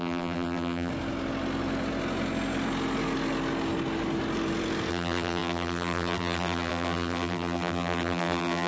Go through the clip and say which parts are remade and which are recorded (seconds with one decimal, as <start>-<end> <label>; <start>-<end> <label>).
0.0-0.9 remade; 0.9-4.9 recorded; 4.9-8.7 remade